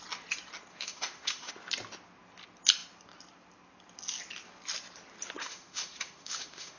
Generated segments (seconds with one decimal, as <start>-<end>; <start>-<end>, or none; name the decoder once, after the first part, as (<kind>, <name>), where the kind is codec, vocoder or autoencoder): 0.7-1.5 (autoencoder, DAC-VAE); 5.4-6.8